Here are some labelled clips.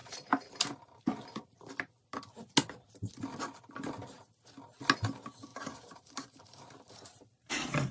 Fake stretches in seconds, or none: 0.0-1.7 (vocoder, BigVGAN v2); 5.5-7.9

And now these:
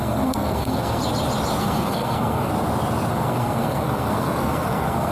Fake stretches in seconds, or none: 0.0-1.0 (codec, SNAC); 1.6-2.5; 3.1-5.1

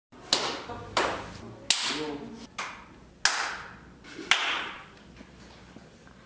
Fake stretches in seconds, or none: 4.4-5.0 (vocoder, Vocos)

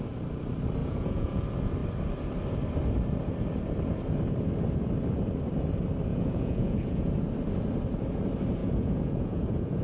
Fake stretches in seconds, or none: 0.8-1.4 (vocoder, Vocos); 6.1-7.1; 8.6-9.8

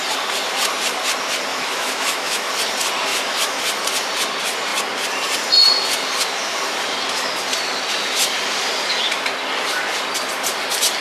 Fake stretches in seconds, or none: 1.5-2.5 (autoencoder, DAC-VAE); 3.1-3.6